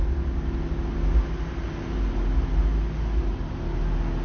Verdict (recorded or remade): recorded